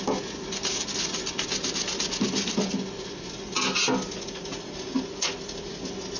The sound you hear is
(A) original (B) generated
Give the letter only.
A